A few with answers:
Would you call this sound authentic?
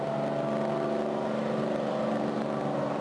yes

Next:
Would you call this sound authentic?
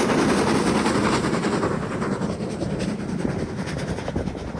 yes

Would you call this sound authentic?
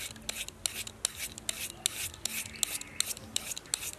yes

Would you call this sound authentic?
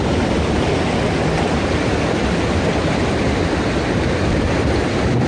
yes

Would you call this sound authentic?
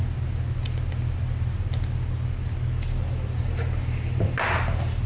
yes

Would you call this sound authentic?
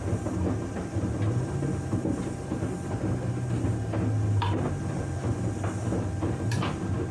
yes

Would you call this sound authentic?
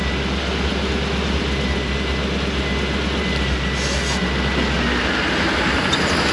yes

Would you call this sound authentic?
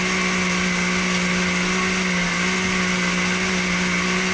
yes